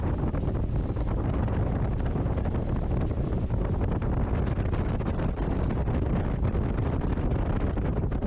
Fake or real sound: real